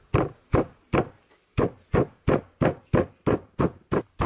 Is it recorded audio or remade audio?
recorded